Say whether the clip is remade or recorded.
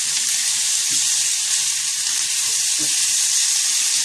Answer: recorded